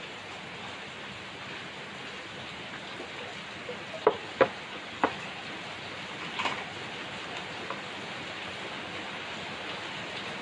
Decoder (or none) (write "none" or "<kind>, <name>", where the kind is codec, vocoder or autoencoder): none